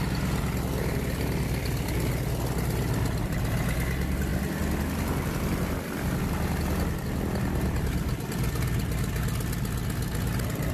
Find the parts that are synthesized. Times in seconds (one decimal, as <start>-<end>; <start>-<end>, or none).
none